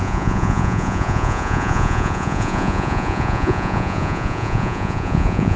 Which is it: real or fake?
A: fake